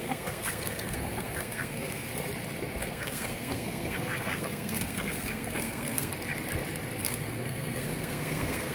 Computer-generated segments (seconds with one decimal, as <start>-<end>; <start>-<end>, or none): 0.0-2.1; 2.8-6.1; 7.0-8.7